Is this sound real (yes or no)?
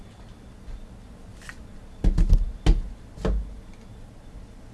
yes